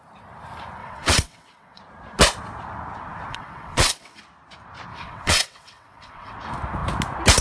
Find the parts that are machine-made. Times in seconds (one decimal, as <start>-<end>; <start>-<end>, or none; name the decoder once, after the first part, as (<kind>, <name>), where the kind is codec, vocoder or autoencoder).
0.8-1.8 (vocoder, WaveNeXt); 3.3-4.2; 4.9-6.3